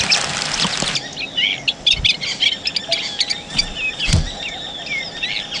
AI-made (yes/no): no